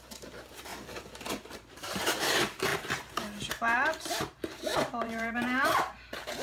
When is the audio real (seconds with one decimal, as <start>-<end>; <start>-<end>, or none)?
none

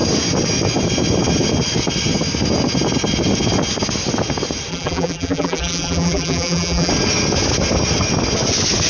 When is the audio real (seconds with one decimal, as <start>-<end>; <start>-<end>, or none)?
0.0-4.7; 6.9-8.9

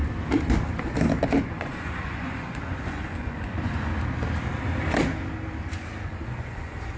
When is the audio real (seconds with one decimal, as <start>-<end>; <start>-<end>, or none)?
0.0-1.4; 3.9-6.0

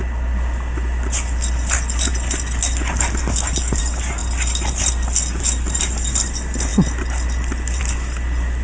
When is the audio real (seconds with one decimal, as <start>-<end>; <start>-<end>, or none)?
0.0-8.6

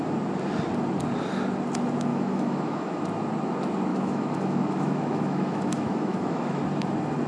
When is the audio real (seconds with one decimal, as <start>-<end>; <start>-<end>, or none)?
0.0-2.1; 3.0-3.9; 6.6-7.3

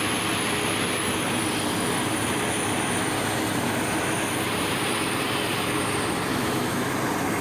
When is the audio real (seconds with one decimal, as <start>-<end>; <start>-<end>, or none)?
0.0-6.3; 6.9-7.4

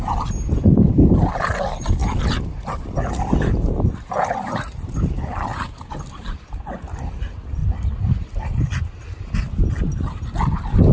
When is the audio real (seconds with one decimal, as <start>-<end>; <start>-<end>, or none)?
0.0-2.0; 3.6-5.5; 6.6-10.9